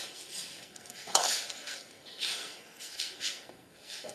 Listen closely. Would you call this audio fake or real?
fake